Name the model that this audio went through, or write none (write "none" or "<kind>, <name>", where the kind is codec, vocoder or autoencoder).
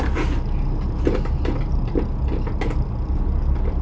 none